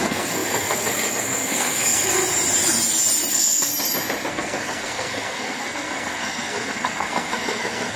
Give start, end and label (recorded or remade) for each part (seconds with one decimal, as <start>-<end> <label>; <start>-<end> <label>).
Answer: 0.0-2.2 remade; 2.2-3.3 recorded; 3.3-3.7 remade; 3.7-4.3 recorded; 4.3-8.0 remade